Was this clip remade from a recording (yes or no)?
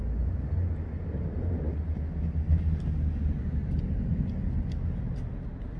no